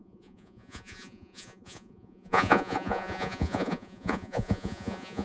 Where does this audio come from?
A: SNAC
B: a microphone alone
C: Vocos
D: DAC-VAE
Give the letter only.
C